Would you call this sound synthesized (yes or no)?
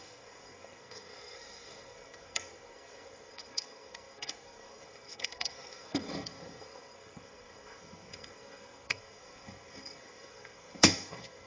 yes